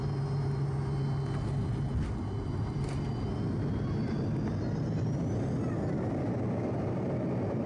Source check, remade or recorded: recorded